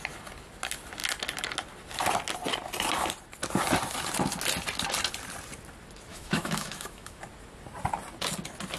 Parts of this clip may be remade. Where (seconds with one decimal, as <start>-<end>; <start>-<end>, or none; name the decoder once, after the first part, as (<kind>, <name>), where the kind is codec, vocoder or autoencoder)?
6.1-7.2 (autoencoder, DAC-VAE)